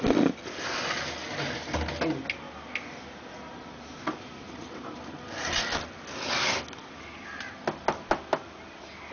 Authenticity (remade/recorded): recorded